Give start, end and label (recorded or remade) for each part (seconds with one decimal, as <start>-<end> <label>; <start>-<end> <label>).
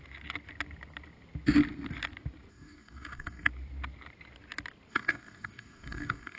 0.0-2.5 recorded; 2.5-3.5 remade; 3.5-4.9 recorded; 4.9-6.4 remade